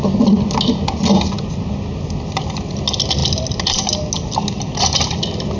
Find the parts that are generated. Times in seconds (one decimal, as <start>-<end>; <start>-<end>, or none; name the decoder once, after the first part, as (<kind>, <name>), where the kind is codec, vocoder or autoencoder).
none